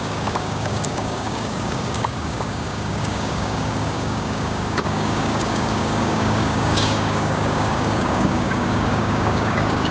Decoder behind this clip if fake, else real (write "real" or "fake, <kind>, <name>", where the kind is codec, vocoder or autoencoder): fake, codec, DAC